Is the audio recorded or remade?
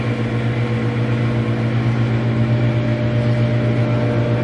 recorded